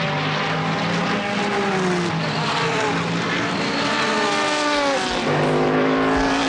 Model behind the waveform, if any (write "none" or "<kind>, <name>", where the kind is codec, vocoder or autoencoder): none